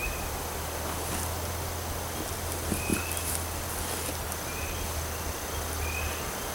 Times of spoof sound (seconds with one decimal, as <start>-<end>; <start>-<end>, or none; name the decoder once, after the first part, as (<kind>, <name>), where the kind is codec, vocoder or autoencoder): none